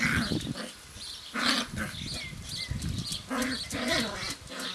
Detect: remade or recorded recorded